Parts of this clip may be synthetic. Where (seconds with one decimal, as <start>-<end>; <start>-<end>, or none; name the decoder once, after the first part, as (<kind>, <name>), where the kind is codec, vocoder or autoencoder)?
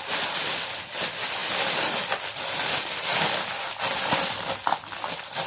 none